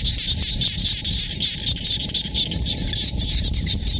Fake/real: real